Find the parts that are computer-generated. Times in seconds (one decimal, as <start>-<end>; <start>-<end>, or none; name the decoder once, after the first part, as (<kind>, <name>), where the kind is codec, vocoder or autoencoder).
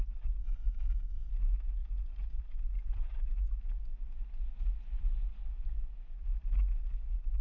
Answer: 0.4-1.3 (codec, SNAC)